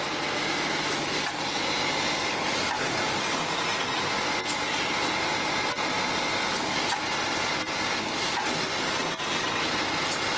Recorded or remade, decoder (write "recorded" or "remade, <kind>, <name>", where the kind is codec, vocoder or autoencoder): recorded